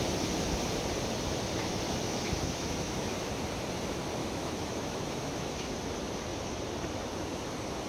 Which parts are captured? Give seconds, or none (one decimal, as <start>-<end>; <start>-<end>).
0.0-1.6; 3.3-4.2; 5.7-7.9